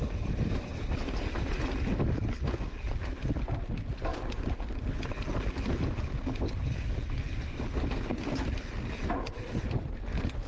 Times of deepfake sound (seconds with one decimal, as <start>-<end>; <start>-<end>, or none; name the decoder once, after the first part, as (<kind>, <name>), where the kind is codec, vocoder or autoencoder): 4.1-4.9 (vocoder, BigVGAN v2)